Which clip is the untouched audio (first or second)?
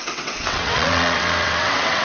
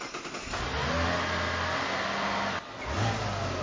second